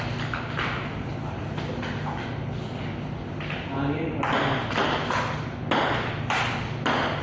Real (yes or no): yes